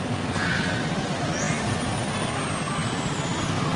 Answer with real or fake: real